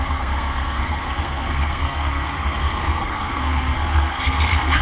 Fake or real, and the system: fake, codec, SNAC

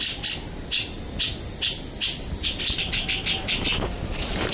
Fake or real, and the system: real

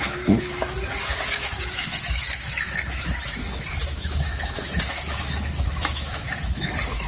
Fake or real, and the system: fake, autoencoder, DAC-VAE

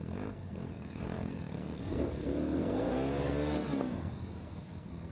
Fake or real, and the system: fake, codec, SNAC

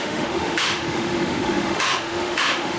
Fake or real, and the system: fake, autoencoder, DAC-VAE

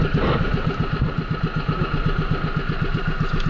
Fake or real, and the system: real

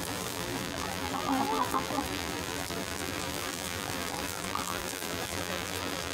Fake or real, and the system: fake, vocoder, BigVGAN v2